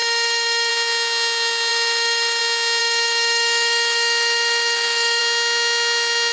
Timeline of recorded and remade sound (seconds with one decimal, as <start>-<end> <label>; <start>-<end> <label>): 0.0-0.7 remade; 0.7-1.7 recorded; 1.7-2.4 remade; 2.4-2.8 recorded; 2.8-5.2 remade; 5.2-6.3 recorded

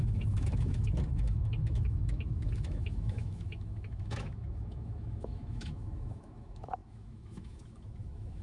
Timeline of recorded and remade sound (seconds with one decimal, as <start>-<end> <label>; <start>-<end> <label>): 0.0-8.4 remade

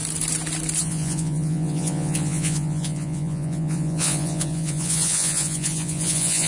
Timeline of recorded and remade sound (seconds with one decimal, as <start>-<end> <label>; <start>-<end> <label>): 0.0-0.8 recorded; 0.8-6.5 remade

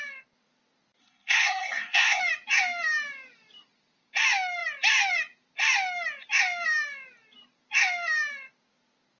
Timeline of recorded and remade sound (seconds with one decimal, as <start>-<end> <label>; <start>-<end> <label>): 0.0-1.0 recorded; 1.0-2.2 remade; 2.2-9.2 recorded

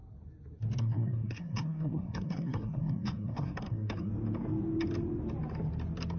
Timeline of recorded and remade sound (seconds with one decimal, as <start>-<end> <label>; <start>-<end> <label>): 0.0-0.8 recorded; 0.8-4.1 remade; 4.1-6.2 recorded

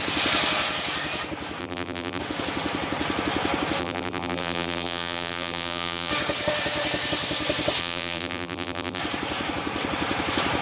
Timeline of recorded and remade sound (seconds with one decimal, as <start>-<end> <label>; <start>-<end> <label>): 0.0-1.6 recorded; 1.6-2.2 remade; 2.2-3.8 recorded; 3.8-6.1 remade; 6.1-7.8 recorded; 7.8-9.0 remade; 9.0-10.6 recorded